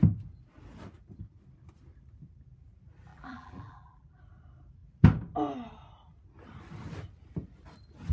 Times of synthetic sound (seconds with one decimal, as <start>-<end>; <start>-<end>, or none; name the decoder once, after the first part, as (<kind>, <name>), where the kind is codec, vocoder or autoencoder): 3.1-4.2 (vocoder, BigVGAN v2)